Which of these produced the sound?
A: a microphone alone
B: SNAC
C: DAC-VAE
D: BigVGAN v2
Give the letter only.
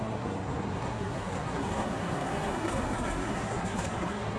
B